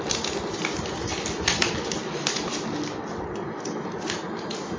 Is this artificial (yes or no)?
no